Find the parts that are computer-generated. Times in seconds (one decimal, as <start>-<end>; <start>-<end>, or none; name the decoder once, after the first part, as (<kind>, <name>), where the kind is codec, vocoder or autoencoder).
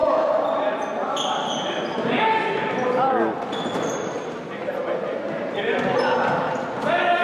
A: 2.6-4.6 (vocoder, BigVGAN v2); 5.6-7.2